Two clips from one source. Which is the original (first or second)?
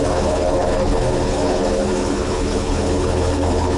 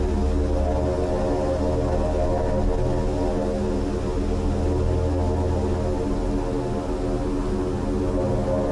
second